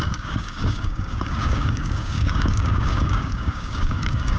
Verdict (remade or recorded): remade